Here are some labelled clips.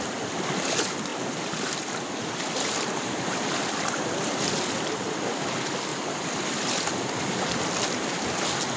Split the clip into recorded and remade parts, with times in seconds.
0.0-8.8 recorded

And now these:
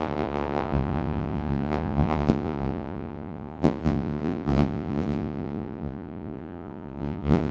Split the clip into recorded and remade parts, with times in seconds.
0.0-7.5 remade

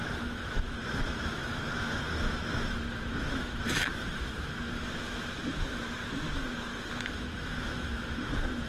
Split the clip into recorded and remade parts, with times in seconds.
0.0-8.7 remade

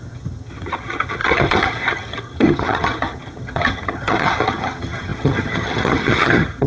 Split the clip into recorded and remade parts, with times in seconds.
0.0-6.7 remade

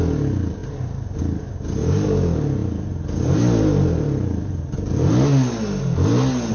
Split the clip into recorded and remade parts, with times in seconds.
0.0-6.5 recorded

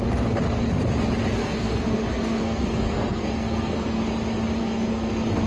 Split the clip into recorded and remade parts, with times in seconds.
0.0-1.4 recorded; 1.4-4.0 remade; 4.0-4.6 recorded; 4.6-5.1 remade; 5.1-5.5 recorded

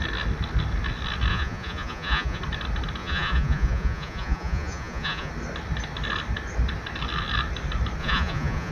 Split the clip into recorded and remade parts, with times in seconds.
0.0-1.3 recorded; 1.3-2.4 remade; 2.4-3.0 recorded; 3.0-5.3 remade; 5.3-8.0 recorded; 8.0-8.7 remade

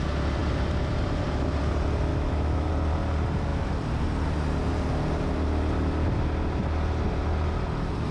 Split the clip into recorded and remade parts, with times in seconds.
0.0-2.1 recorded; 2.1-2.7 remade; 2.7-8.1 recorded